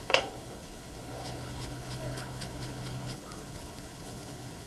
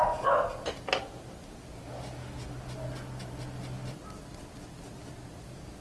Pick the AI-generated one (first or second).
first